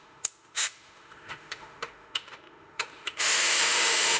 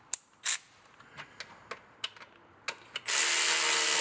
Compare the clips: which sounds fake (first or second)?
first